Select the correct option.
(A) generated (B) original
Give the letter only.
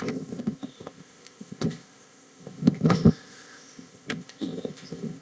A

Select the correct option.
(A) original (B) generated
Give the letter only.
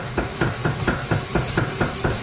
A